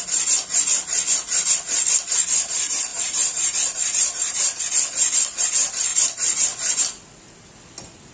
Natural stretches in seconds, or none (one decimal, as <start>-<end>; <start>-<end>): 0.0-2.9; 4.6-5.9; 6.8-8.1

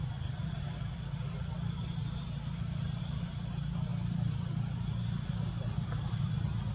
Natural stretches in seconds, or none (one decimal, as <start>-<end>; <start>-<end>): 0.0-6.7

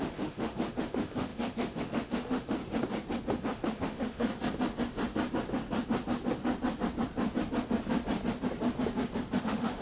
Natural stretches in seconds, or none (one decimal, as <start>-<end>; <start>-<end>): 2.6-3.4; 4.3-9.4

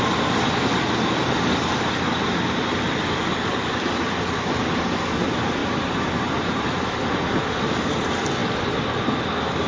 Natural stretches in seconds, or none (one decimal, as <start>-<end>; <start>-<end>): 0.0-9.7

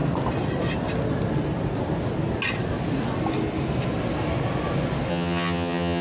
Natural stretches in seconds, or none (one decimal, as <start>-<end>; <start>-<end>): 0.0-5.1

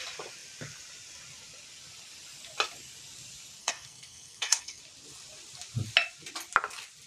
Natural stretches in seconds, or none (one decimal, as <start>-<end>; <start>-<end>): 0.0-3.6; 4.8-7.1

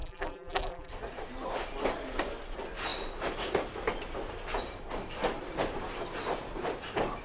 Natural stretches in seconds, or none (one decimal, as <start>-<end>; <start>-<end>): 0.9-7.2

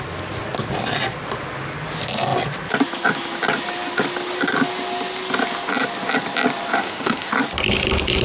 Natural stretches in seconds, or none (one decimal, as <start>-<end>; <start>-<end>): 0.0-6.8; 7.3-8.2